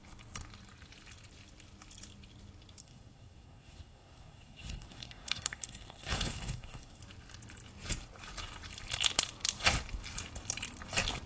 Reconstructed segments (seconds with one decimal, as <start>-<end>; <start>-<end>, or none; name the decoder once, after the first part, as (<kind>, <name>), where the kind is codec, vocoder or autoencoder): 2.8-7.0 (codec, SNAC)

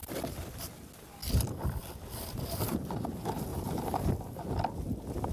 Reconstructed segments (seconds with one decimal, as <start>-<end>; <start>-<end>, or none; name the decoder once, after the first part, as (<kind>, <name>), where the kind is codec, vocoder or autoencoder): 3.5-4.1 (vocoder, BigVGAN v2)

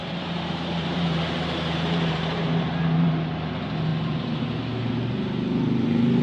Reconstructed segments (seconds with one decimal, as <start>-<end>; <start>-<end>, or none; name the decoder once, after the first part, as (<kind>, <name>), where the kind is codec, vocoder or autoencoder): 0.0-3.1 (vocoder, BigVGAN v2); 3.9-4.6

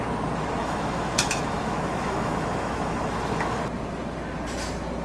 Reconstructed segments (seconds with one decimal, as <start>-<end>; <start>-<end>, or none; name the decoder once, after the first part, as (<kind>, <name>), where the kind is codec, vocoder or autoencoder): 0.6-3.6 (autoencoder, DAC-VAE)

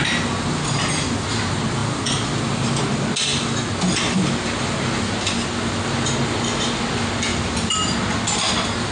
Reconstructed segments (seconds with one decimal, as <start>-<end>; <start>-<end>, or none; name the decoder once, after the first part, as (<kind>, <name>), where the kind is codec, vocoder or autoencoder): none

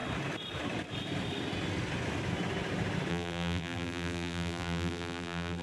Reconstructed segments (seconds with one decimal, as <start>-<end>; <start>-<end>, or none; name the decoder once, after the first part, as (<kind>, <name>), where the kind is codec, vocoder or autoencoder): 3.1-5.6 (vocoder, BigVGAN v2)

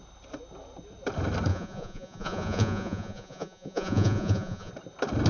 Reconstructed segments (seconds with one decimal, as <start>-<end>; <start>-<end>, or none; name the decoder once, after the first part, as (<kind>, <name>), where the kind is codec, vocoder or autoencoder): 1.5-4.7 (vocoder, Vocos)